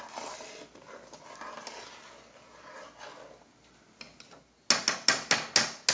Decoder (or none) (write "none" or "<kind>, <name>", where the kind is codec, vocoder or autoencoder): none